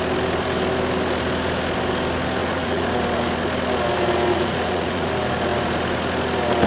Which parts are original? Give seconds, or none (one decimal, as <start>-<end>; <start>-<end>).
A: 0.0-2.4; 2.9-4.3; 5.1-6.7